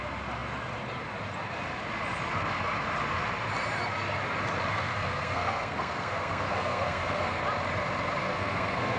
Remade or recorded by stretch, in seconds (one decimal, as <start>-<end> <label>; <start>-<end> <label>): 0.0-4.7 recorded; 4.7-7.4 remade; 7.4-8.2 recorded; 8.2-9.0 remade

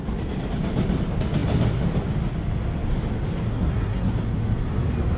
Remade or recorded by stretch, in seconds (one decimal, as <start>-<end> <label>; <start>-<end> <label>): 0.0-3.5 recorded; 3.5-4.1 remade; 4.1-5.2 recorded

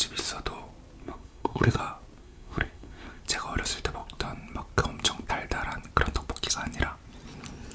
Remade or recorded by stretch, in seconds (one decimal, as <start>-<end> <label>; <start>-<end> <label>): 0.0-1.0 recorded; 1.0-1.8 remade; 1.8-2.2 recorded; 2.2-3.2 remade; 3.2-7.7 recorded

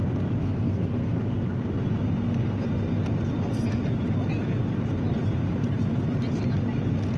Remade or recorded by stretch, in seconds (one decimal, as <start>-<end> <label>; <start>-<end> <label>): 0.0-0.4 recorded; 0.4-1.2 remade; 1.2-7.2 recorded